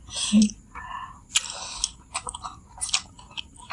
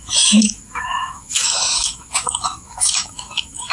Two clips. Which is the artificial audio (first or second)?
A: second